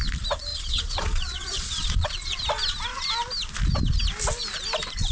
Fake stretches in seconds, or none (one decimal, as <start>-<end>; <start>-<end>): 0.5-2.4